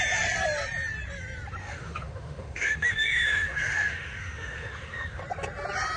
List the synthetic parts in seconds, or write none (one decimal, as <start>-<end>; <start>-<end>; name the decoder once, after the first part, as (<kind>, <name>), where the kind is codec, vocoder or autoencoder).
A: 1.6-5.2 (autoencoder, DAC-VAE)